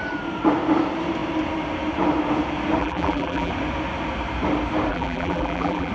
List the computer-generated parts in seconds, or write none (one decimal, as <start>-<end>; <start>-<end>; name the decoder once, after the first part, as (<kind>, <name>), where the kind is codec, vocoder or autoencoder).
2.8-3.5 (vocoder, BigVGAN v2); 4.9-5.9